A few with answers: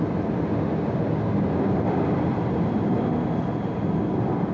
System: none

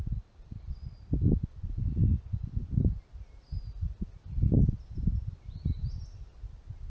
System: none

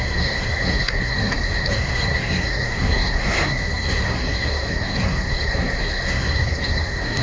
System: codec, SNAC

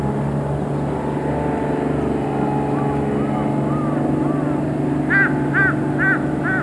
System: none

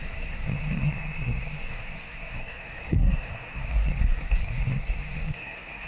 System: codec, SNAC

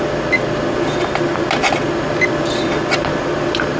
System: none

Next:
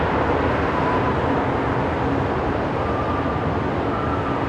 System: none